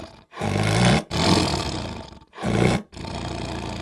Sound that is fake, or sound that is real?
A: real